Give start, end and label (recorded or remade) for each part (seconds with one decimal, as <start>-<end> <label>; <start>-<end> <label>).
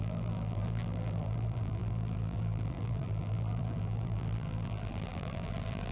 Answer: 0.0-5.9 remade